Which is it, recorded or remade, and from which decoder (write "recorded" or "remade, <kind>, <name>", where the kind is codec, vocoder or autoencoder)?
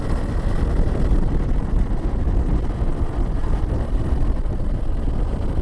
recorded